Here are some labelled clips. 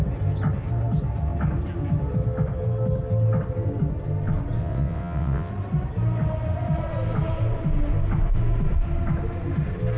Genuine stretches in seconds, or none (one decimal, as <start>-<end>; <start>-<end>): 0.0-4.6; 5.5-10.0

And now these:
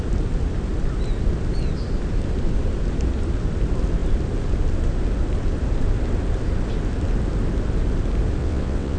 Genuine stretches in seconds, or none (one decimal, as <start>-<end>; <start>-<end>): 0.0-8.4

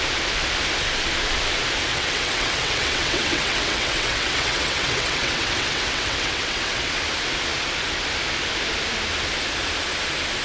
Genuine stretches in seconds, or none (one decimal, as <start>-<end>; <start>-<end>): 0.0-1.9; 7.0-10.4

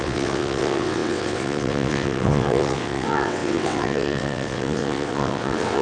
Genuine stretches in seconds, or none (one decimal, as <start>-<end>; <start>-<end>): none